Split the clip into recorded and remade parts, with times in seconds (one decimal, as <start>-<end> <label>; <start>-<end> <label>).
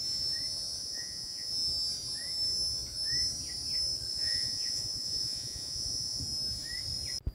0.0-0.8 recorded; 0.8-1.5 remade; 1.5-4.1 recorded; 4.1-6.2 remade; 6.2-7.3 recorded